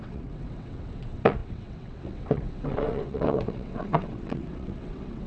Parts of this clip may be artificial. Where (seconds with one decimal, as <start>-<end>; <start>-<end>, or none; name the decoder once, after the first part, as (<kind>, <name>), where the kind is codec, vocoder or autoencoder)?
0.0-5.3 (vocoder, WaveNeXt)